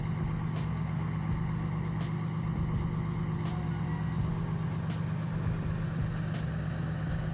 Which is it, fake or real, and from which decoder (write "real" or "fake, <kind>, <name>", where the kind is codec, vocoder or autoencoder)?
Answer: real